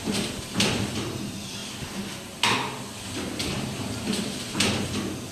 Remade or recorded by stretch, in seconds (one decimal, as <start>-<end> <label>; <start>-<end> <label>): 0.0-5.3 recorded